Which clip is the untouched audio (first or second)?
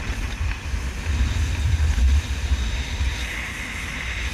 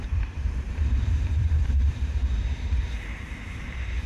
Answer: first